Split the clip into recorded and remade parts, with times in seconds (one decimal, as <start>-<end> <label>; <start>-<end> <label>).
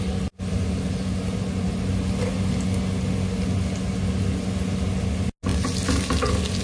0.0-6.6 recorded